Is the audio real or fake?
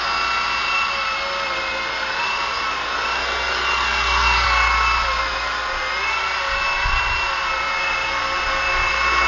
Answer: real